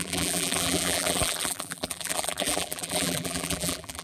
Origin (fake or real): fake